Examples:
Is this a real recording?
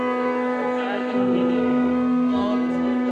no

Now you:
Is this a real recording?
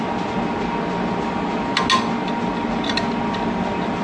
yes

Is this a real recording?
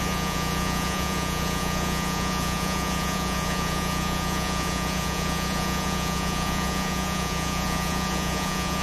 no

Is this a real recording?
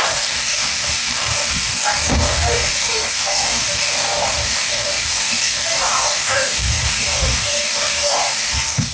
no